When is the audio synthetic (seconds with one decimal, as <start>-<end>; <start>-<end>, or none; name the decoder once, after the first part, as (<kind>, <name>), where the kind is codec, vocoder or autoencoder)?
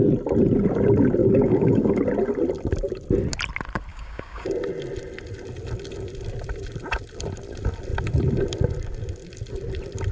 1.2-2.0 (codec, DAC); 3.9-4.5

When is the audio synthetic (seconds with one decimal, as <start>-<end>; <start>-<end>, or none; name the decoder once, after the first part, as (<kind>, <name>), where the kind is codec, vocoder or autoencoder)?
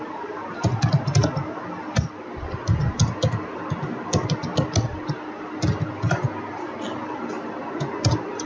7.6-8.1 (vocoder, Vocos)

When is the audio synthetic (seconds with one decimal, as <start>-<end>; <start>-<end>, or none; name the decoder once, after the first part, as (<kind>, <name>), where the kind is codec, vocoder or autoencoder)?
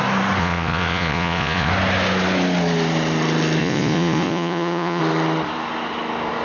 0.4-1.7 (vocoder, Vocos); 3.6-5.0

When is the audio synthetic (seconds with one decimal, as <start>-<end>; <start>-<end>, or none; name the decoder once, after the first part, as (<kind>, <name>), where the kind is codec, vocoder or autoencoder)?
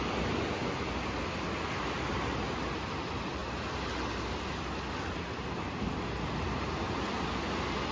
none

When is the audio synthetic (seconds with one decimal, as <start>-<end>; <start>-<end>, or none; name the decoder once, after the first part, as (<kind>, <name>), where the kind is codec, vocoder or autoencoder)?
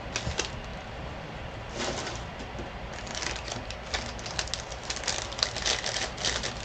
none